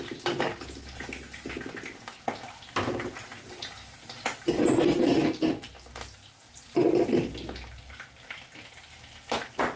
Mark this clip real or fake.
real